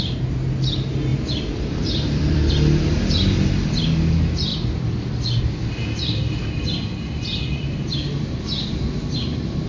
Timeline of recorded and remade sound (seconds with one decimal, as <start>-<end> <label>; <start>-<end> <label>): 0.0-1.1 recorded; 1.1-2.5 remade; 2.5-4.5 recorded; 4.5-5.4 remade; 5.4-9.7 recorded